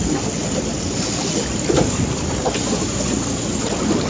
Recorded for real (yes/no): yes